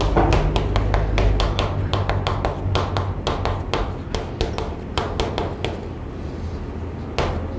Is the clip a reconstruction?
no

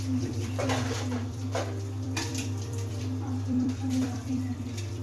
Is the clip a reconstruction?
yes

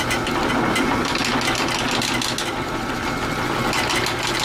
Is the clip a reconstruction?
no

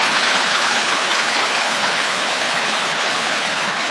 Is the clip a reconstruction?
yes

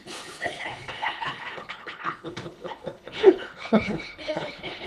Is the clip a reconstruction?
yes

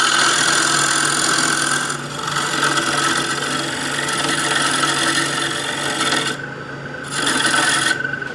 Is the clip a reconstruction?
no